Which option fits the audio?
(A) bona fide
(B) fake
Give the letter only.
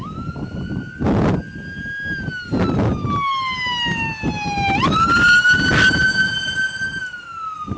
A